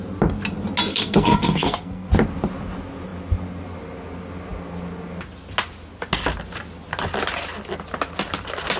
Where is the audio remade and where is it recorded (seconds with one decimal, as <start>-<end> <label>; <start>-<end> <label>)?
0.0-0.9 recorded; 0.9-2.1 remade; 2.1-8.8 recorded